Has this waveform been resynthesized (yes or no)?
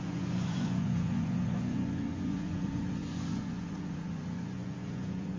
yes